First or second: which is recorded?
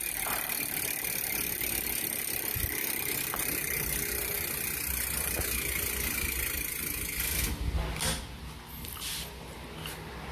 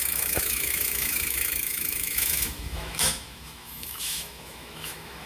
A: first